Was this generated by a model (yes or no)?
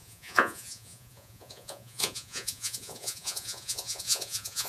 yes